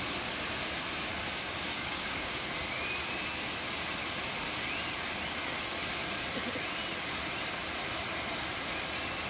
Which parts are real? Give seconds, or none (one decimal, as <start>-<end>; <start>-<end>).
0.0-1.1; 2.5-9.3